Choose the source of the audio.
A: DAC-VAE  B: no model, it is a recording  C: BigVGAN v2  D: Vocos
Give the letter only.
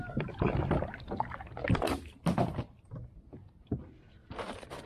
B